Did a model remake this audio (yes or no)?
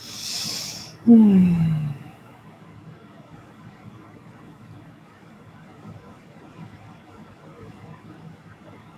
yes